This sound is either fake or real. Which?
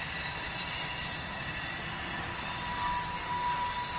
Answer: real